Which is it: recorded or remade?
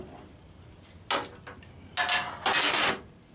recorded